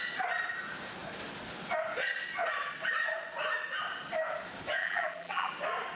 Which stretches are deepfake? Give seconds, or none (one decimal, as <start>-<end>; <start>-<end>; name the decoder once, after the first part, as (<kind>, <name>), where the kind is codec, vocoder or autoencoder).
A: 4.8-5.5 (vocoder, BigVGAN v2)